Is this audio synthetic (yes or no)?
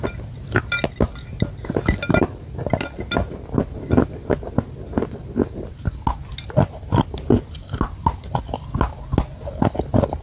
no